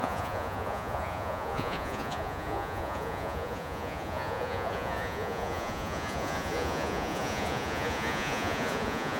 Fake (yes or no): yes